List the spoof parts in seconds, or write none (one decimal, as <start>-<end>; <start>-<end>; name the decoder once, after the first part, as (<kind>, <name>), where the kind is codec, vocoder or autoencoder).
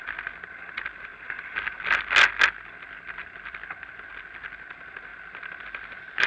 0.0-1.1 (vocoder, BigVGAN v2); 2.8-5.1; 5.6-6.3